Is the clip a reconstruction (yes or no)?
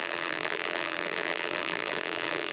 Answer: yes